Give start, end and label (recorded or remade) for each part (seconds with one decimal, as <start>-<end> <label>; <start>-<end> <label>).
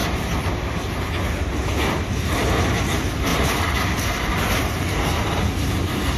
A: 0.0-1.1 remade; 1.1-3.3 recorded; 3.3-6.2 remade